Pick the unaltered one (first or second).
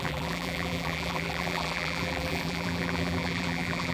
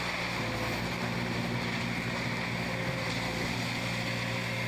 second